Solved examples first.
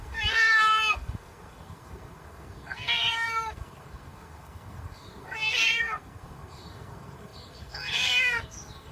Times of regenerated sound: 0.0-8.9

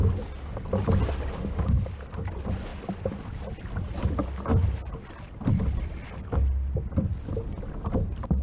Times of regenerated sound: none

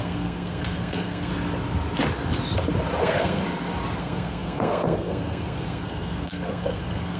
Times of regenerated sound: 0.0-1.3; 3.0-3.4; 4.0-7.2

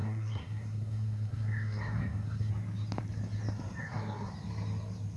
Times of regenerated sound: 0.0-2.5; 3.8-4.3

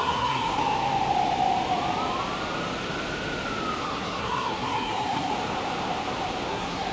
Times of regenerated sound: 0.0-0.6; 3.8-5.3; 6.5-6.9

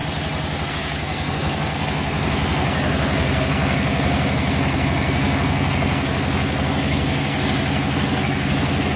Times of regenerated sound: 0.7-9.0

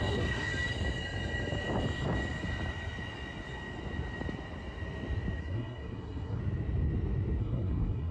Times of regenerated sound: 0.0-0.5; 5.4-6.4; 7.4-8.1

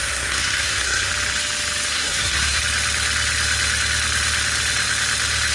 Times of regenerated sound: 0.0-1.1; 1.9-2.6